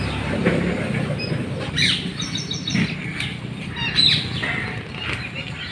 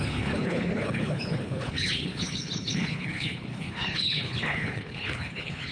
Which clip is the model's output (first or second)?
second